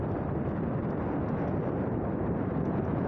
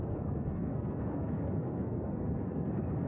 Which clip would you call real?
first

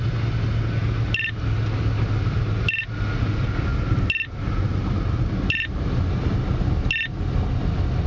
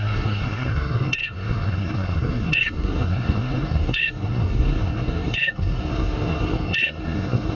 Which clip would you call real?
first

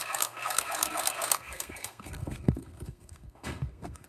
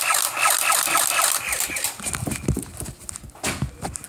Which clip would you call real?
second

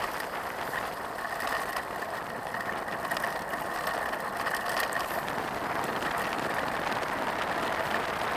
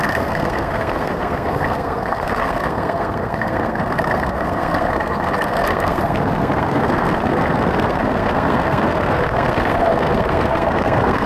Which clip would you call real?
first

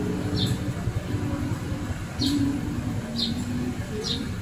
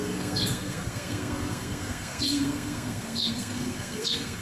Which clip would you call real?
first